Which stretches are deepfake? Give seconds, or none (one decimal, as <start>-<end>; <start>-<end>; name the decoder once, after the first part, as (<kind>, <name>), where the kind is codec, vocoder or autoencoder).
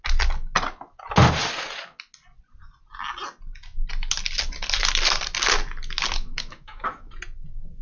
6.3-7.1 (autoencoder, DAC-VAE)